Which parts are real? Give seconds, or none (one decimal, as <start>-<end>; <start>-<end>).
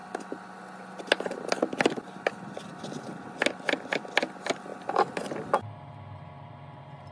0.0-7.1